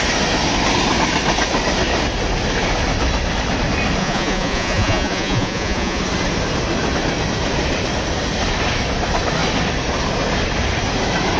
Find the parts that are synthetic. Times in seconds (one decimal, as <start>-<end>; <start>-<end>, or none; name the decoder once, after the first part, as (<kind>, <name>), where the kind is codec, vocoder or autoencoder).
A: 4.0-6.0 (vocoder, Vocos)